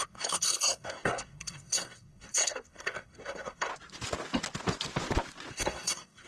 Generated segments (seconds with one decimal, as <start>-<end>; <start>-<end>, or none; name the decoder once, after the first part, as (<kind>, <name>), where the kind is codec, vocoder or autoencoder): 0.0-3.7 (codec, SNAC); 5.5-6.3